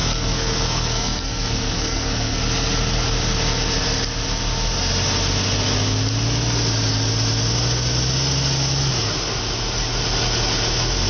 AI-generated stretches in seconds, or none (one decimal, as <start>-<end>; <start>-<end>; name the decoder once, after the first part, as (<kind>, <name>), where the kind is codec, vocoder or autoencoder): 0.0-2.4 (codec, SNAC)